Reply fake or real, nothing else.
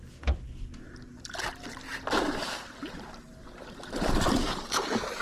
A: real